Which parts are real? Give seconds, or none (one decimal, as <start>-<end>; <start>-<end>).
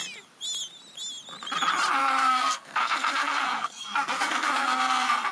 0.0-2.0